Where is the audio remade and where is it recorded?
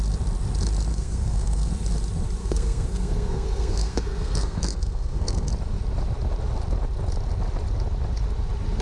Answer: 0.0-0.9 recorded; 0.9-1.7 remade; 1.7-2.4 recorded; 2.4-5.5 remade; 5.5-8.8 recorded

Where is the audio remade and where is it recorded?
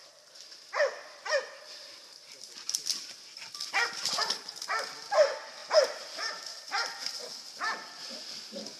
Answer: 0.0-8.8 recorded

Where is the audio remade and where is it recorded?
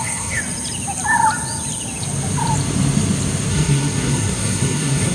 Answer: 0.0-0.4 remade; 0.4-3.5 recorded; 3.5-5.1 remade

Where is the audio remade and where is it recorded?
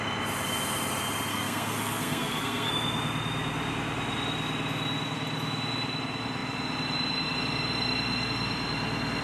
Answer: 0.0-1.3 recorded; 1.3-2.7 remade; 2.7-9.2 recorded